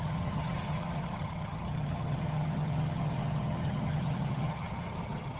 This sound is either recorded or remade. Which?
remade